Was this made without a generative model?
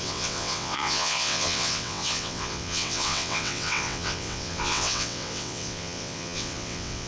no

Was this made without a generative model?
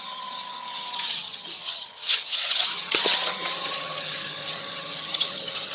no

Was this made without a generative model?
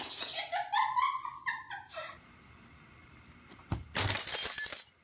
yes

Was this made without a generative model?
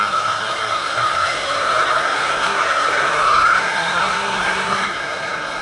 no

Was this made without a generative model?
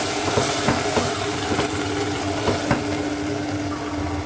yes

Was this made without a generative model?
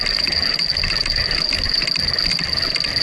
yes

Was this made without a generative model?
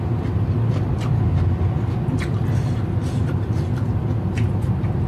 yes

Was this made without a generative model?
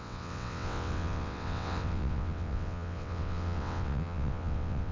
no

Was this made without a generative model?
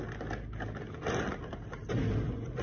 yes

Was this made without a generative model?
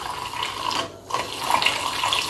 yes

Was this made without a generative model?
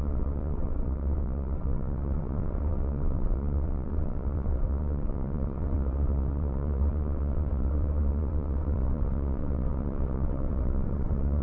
no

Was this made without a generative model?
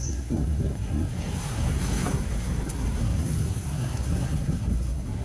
no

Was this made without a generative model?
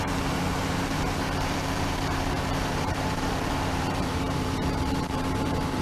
no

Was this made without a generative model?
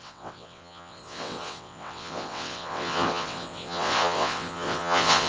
no